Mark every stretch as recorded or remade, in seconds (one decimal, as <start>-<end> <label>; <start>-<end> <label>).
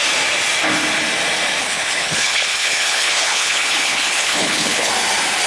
0.0-1.6 recorded; 1.6-4.9 remade; 4.9-5.5 recorded